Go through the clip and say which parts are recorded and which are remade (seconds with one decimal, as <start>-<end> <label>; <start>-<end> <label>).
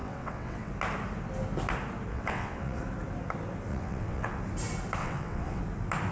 0.0-0.7 remade; 0.7-2.1 recorded; 2.1-2.8 remade; 2.8-3.7 recorded; 3.7-4.4 remade; 4.4-5.0 recorded; 5.0-5.6 remade; 5.6-6.1 recorded